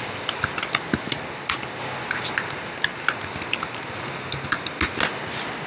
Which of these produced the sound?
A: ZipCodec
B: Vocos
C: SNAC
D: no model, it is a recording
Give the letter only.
D